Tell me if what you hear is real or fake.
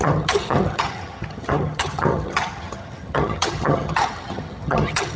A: fake